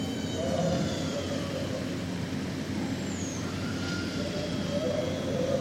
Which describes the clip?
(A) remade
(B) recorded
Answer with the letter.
B